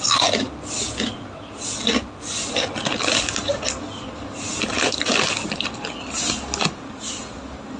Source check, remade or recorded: recorded